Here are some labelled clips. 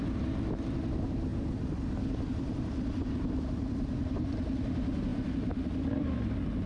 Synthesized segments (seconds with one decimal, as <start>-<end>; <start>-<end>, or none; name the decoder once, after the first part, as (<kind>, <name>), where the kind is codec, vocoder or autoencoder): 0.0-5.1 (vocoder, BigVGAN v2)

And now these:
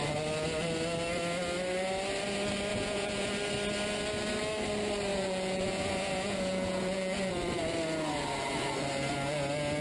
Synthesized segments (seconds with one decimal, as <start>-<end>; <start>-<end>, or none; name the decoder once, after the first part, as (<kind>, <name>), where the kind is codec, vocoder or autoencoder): 2.7-3.3 (vocoder, Vocos); 5.1-7.3

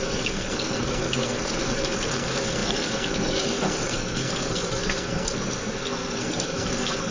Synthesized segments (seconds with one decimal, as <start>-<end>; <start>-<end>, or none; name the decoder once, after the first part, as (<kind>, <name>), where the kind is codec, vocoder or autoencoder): 0.0-7.1 (codec, SNAC)

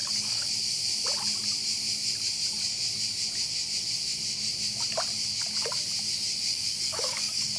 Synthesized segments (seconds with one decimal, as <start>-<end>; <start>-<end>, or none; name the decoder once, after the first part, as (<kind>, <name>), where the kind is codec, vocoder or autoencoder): 0.0-0.5 (codec, DAC); 6.5-7.6

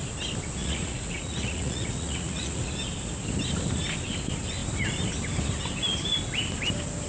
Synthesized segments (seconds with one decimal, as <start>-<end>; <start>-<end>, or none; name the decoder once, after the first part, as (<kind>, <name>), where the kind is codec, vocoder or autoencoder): 0.6-2.6 (vocoder, Vocos)

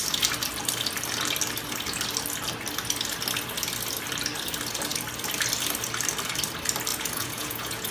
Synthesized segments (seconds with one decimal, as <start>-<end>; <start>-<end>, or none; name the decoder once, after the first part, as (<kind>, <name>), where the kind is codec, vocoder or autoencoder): 6.9-7.9 (vocoder, Vocos)

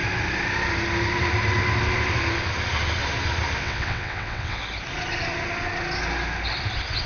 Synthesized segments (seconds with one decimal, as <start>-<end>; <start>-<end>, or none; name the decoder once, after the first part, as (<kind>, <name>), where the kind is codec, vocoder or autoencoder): 3.6-4.6 (vocoder, WaveNeXt)

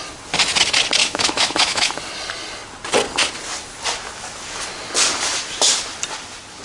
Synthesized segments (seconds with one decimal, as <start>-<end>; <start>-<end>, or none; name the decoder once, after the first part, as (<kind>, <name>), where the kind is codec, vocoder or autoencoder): 1.0-1.9 (autoencoder, DAC-VAE)